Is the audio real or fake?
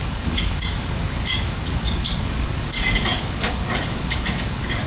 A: fake